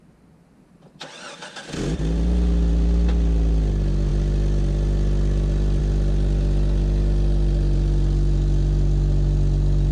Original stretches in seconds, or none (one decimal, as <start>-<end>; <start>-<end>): 0.0-9.9